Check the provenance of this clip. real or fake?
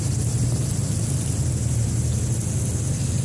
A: real